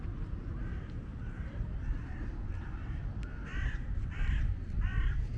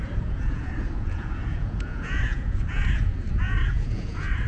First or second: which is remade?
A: second